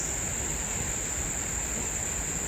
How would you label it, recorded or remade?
recorded